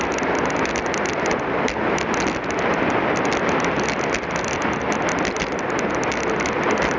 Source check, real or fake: real